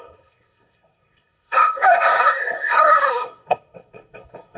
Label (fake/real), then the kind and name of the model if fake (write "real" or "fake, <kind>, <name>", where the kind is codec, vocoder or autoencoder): fake, codec, SNAC